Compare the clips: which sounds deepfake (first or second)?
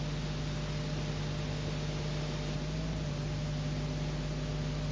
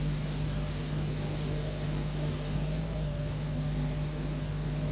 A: second